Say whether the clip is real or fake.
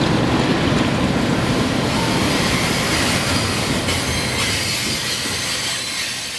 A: real